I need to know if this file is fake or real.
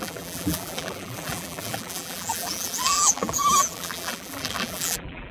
fake